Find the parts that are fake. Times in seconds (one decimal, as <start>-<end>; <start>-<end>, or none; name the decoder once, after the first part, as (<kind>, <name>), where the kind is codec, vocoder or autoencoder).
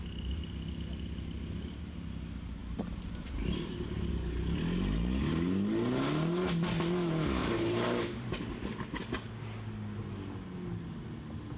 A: 2.6-4.1 (vocoder, BigVGAN v2); 7.4-8.5